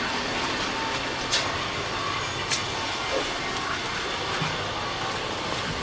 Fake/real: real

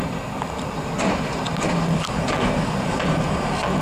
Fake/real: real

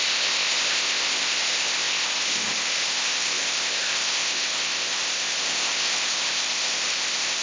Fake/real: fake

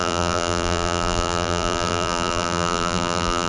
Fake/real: fake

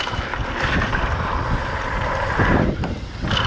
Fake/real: real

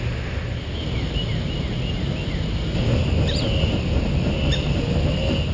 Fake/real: real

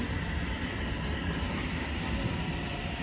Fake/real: real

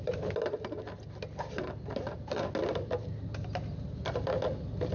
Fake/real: real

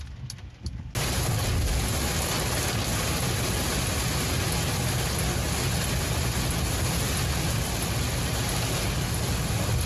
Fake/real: real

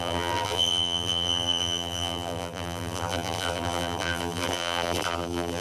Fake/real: fake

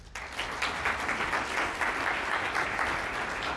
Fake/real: real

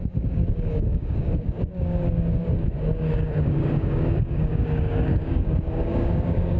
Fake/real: fake